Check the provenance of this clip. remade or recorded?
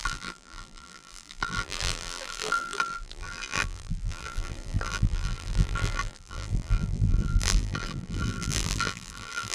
remade